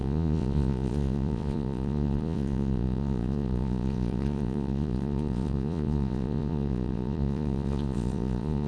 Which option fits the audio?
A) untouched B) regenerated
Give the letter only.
B